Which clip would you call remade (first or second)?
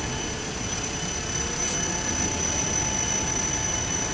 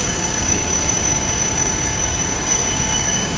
second